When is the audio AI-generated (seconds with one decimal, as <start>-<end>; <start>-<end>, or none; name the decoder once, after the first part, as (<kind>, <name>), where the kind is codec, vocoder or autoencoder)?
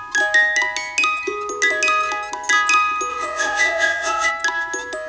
3.1-4.3 (vocoder, WaveNeXt)